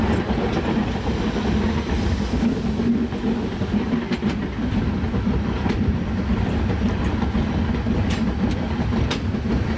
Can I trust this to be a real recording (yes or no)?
yes